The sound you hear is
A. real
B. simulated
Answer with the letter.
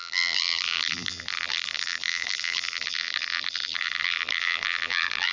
B